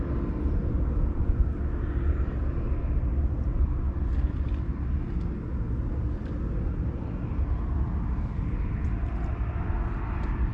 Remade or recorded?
recorded